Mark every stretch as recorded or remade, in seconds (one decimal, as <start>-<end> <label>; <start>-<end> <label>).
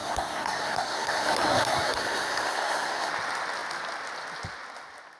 0.0-3.1 remade; 3.1-5.2 recorded